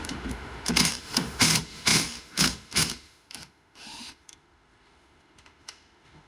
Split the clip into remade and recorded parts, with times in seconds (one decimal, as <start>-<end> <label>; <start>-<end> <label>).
0.0-6.3 remade